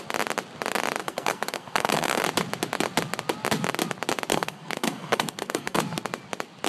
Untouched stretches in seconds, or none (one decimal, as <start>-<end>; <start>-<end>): 0.0-1.0; 2.2-4.3; 5.8-6.7